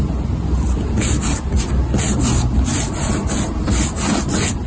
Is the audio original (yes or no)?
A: yes